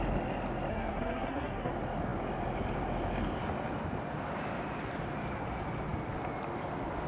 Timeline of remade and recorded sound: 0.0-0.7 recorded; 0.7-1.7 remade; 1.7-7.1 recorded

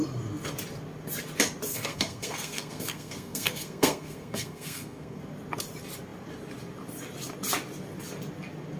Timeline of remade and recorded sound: 0.0-1.7 recorded; 1.7-5.2 remade; 5.2-8.8 recorded

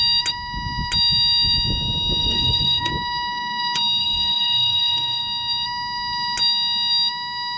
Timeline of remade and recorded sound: 0.0-2.2 recorded; 2.2-2.9 remade; 2.9-4.0 recorded; 4.0-5.2 remade; 5.2-7.6 recorded

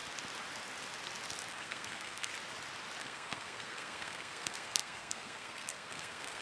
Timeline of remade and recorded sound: 0.0-1.5 recorded; 1.5-2.3 remade; 2.3-3.0 recorded; 3.0-6.4 remade

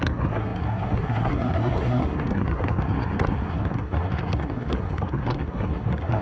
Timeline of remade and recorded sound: 0.0-6.2 remade